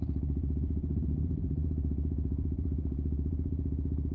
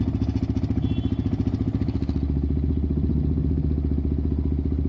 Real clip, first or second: second